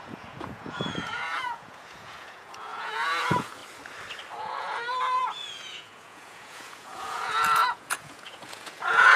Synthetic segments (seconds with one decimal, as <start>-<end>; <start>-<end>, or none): 0.0-3.6; 4.4-9.2